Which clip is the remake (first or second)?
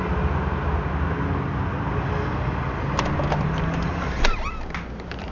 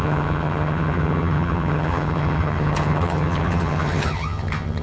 second